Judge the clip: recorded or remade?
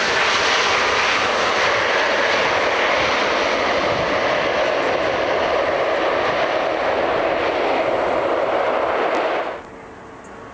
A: recorded